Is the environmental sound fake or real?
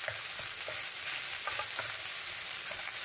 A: fake